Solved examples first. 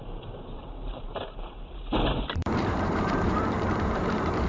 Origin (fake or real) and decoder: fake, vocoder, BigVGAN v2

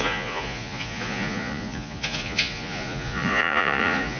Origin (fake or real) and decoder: fake, vocoder, Vocos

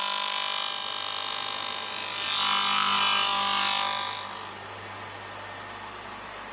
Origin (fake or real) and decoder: real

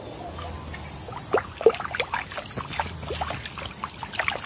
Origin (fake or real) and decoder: real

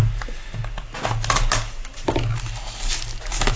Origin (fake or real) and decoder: real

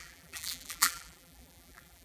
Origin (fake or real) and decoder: fake, vocoder, BigVGAN v2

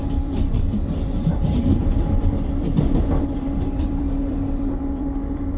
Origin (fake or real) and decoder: fake, vocoder, BigVGAN v2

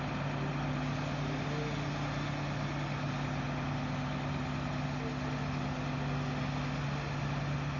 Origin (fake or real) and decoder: real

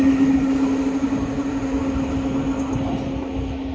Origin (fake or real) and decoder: real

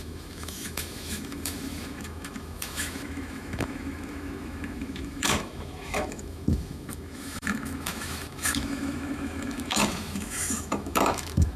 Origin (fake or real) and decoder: fake, autoencoder, DAC-VAE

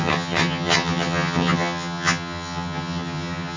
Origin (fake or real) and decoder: fake, vocoder, HiFi-GAN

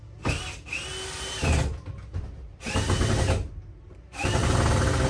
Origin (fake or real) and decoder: real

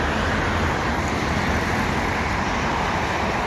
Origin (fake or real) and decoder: real